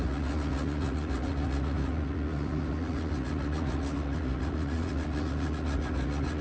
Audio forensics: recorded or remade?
remade